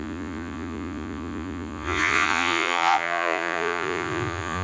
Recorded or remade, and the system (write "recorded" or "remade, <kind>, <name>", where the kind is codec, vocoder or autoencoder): remade, vocoder, Vocos